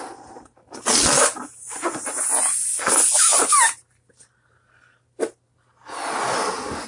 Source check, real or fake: real